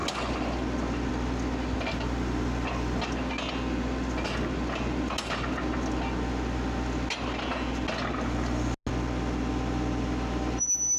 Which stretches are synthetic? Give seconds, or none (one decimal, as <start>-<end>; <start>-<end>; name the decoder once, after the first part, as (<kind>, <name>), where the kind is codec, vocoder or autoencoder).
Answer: none